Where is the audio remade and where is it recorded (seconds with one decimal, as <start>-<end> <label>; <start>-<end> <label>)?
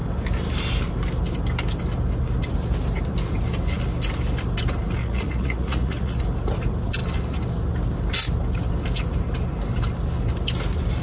0.0-5.0 recorded; 5.0-6.2 remade; 6.2-11.0 recorded